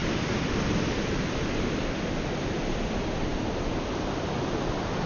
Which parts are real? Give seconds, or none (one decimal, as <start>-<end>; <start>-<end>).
0.0-5.1